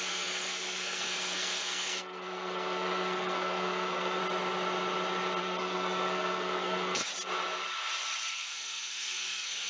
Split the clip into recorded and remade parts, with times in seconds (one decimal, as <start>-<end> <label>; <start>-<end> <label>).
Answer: 0.0-4.2 remade; 4.2-5.4 recorded; 5.4-7.1 remade; 7.1-8.3 recorded; 8.3-9.7 remade